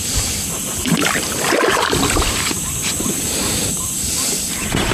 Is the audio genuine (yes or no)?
yes